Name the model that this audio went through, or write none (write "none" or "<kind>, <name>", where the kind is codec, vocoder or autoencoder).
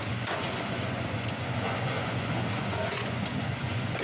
vocoder, Vocos